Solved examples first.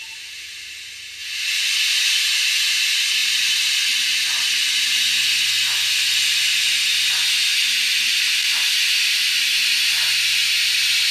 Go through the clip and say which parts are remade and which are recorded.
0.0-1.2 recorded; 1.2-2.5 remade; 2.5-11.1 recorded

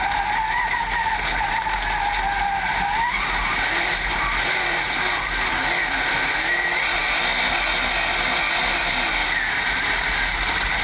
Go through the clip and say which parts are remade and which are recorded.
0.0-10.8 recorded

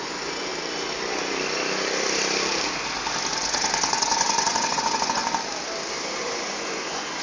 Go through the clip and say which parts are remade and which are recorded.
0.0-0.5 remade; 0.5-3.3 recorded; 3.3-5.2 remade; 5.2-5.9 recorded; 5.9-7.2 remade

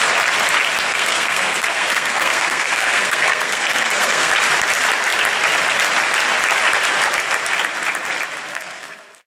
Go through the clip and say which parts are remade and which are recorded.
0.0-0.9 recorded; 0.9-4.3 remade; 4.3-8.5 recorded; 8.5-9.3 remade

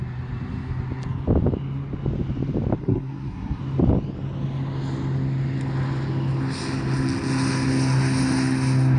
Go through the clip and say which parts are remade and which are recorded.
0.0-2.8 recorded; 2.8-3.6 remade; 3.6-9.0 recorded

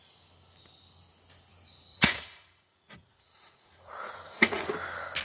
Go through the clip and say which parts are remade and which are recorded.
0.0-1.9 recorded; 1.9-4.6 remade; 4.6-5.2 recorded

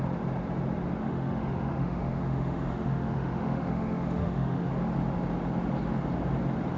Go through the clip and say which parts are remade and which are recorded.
0.0-1.0 recorded; 1.0-4.7 remade; 4.7-6.8 recorded